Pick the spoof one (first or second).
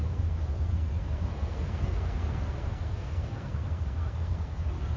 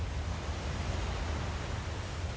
first